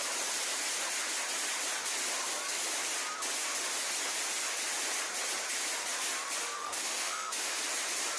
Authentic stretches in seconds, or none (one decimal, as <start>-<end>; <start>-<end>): 0.0-6.6; 7.6-8.2